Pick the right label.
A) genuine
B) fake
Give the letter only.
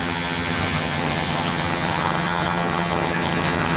B